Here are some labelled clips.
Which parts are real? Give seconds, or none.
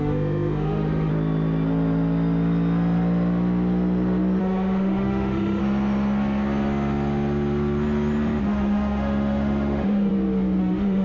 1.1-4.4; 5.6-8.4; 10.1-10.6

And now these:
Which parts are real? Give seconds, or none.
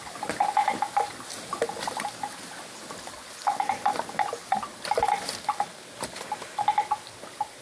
0.0-7.6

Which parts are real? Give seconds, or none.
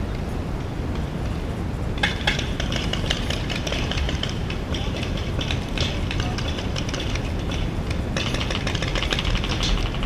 0.0-2.1; 5.2-10.1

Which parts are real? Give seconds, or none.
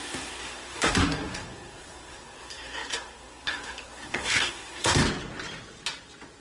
5.0-6.4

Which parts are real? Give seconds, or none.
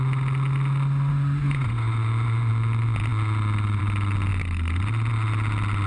0.0-1.1; 2.5-5.9